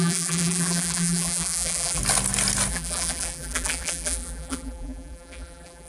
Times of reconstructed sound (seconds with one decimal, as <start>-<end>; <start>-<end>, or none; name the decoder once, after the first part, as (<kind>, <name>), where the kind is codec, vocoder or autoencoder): 0.0-2.0 (vocoder, BigVGAN v2); 2.7-5.9